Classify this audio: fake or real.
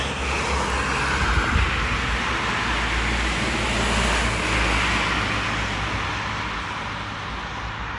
real